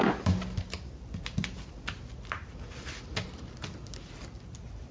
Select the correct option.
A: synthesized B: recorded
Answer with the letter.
B